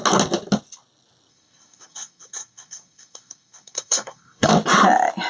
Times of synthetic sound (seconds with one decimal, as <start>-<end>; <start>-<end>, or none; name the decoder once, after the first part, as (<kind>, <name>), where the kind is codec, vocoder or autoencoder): 1.3-4.5 (codec, SNAC)

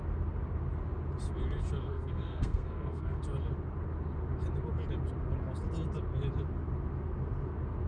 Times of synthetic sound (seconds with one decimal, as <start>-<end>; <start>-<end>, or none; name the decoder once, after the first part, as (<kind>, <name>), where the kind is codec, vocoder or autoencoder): 1.9-3.2 (codec, SNAC)

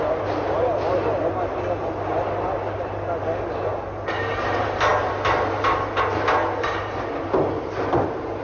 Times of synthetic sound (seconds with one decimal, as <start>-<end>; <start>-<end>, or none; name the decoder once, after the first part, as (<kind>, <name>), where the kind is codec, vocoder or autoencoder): none

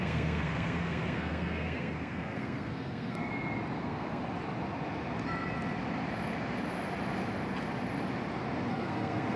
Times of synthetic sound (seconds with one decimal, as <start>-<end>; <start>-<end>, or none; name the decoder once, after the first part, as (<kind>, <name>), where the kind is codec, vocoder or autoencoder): 0.0-3.3 (codec, SNAC); 3.8-4.2; 8.7-9.4